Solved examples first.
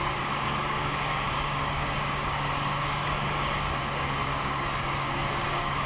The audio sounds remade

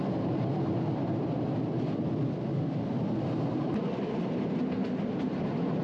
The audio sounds recorded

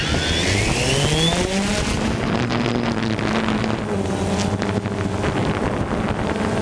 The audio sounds recorded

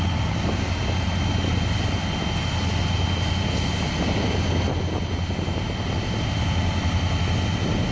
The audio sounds recorded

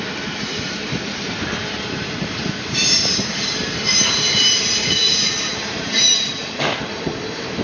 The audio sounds remade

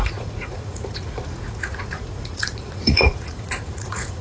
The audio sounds remade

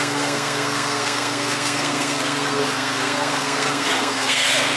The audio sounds remade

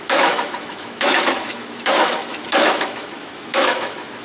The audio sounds remade